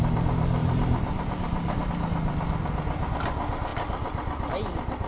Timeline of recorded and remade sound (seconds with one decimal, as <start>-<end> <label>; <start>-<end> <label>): 0.0-0.6 recorded; 0.6-1.9 remade; 1.9-3.7 recorded; 3.7-4.5 remade; 4.5-5.1 recorded